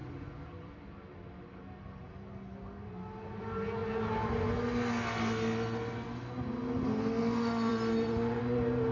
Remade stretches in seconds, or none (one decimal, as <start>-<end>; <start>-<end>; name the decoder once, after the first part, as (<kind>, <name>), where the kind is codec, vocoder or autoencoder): 7.7-8.4 (vocoder, BigVGAN v2)